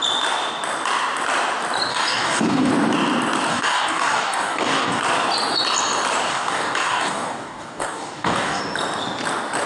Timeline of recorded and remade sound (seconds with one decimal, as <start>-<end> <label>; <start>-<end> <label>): 0.0-1.9 recorded; 1.9-2.7 remade; 2.7-3.5 recorded; 3.5-5.0 remade; 5.0-6.3 recorded; 6.3-8.6 remade; 8.6-9.7 recorded